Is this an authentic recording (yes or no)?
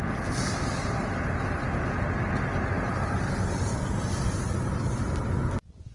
yes